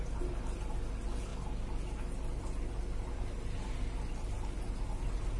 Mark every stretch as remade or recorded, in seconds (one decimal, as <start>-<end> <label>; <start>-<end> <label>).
0.0-5.4 recorded